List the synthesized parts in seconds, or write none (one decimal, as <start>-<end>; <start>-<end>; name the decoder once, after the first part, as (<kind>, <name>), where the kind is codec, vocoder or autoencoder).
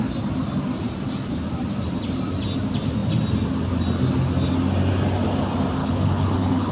5.8-6.7 (codec, HILCodec)